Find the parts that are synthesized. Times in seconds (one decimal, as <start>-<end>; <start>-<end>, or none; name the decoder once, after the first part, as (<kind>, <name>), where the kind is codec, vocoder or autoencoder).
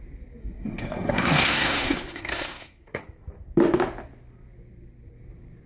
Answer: 0.4-3.0 (codec, SNAC)